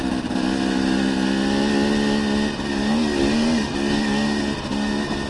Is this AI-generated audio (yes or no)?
no